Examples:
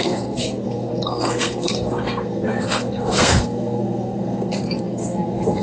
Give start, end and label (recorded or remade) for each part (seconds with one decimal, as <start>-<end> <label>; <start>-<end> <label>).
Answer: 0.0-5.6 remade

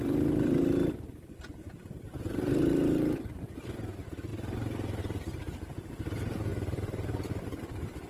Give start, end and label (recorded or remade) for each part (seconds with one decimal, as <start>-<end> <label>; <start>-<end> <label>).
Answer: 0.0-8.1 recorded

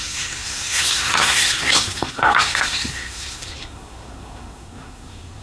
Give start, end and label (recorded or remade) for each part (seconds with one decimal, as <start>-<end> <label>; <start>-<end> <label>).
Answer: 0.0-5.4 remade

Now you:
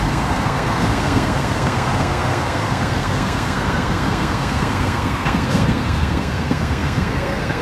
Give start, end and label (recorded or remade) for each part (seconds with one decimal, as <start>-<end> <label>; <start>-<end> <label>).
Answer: 0.0-7.6 remade